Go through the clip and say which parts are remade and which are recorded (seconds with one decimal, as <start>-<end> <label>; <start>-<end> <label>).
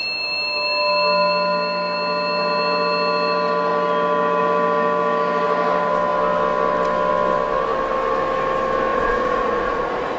0.0-8.9 recorded; 8.9-10.2 remade